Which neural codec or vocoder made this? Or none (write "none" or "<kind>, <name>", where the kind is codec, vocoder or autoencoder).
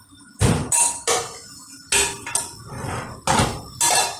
none